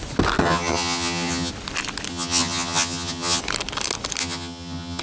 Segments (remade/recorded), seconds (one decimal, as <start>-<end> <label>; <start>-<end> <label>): 0.0-0.4 recorded; 0.4-1.5 remade; 1.5-2.1 recorded; 2.1-3.4 remade; 3.4-4.2 recorded; 4.2-5.0 remade